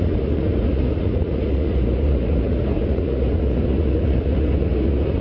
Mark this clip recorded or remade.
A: remade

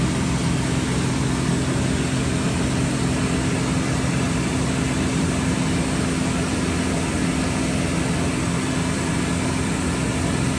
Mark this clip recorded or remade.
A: recorded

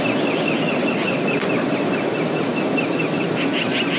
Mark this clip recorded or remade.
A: recorded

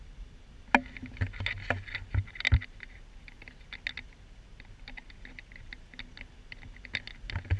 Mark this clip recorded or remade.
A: recorded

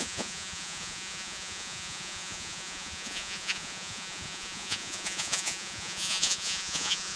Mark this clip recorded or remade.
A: remade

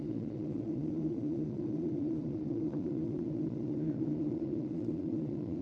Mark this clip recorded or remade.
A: remade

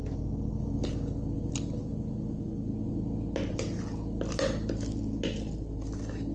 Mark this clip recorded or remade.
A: recorded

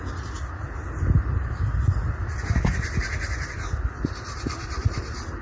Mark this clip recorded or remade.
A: recorded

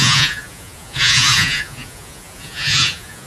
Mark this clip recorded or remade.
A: remade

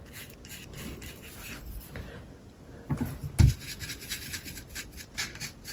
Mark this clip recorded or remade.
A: recorded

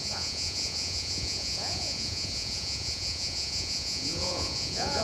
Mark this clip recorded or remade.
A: remade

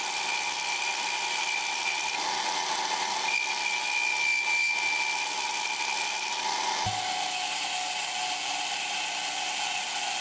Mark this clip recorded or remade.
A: recorded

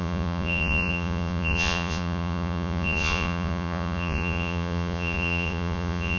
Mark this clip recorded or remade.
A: remade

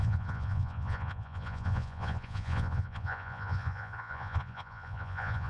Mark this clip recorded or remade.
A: remade